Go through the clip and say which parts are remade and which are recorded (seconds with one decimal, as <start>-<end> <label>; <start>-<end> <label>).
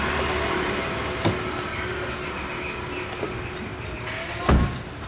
0.0-5.1 recorded